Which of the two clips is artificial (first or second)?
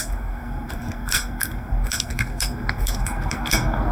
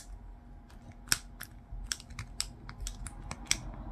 first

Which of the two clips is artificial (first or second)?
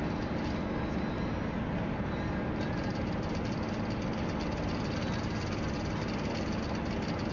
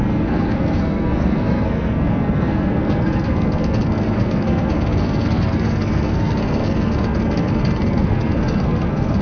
second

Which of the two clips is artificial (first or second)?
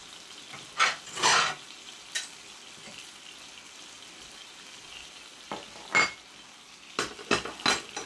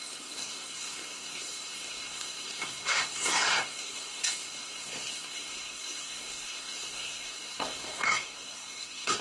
second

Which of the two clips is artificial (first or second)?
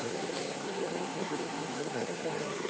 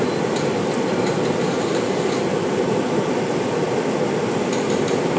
first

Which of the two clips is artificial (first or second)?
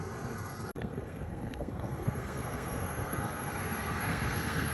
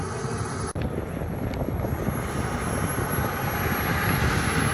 first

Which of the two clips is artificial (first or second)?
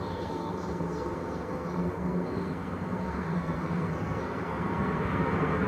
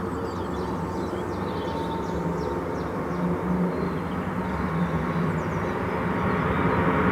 first